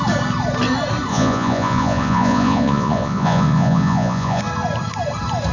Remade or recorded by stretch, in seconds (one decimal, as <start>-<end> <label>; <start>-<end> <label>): 0.0-1.1 recorded; 1.1-4.4 remade; 4.4-5.5 recorded